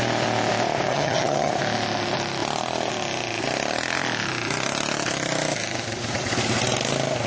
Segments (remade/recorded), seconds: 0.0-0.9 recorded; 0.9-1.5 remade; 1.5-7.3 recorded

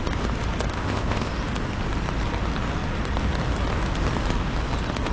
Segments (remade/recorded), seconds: 0.0-0.7 recorded; 0.7-1.3 remade; 1.3-5.1 recorded

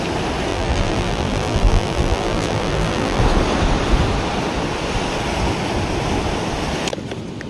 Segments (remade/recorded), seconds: 0.0-0.5 recorded; 0.5-3.2 remade; 3.2-7.5 recorded

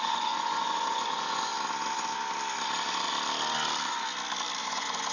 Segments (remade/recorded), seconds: 0.0-1.5 remade; 1.5-4.6 recorded; 4.6-5.1 remade